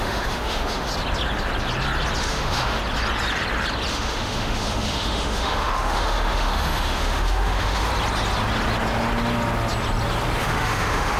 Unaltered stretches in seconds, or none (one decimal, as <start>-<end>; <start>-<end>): 0.9-2.2; 2.8-3.9; 7.9-10.4